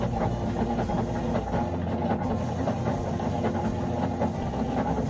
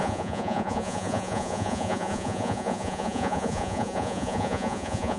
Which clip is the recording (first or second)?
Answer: first